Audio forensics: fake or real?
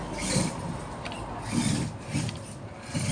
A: real